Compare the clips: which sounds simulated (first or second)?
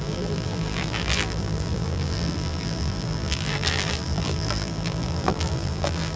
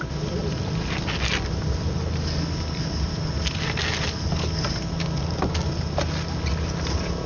first